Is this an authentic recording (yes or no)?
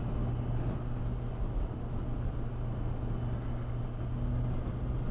yes